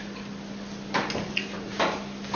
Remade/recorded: recorded